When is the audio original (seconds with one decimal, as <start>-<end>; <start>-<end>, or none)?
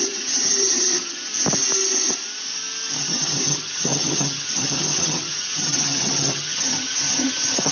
1.3-3.0